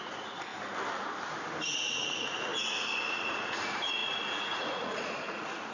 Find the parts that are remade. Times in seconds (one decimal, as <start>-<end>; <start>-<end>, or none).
0.0-0.5; 1.7-5.7